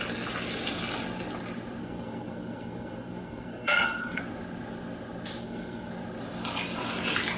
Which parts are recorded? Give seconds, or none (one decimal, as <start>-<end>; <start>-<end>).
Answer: 0.0-1.8; 4.2-5.4; 5.9-7.4